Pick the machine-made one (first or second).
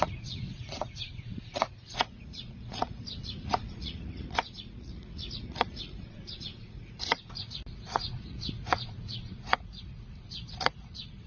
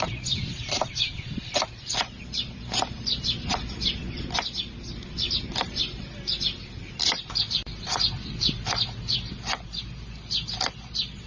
first